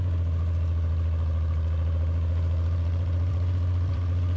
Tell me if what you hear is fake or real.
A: fake